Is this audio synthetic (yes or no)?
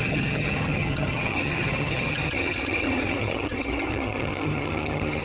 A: yes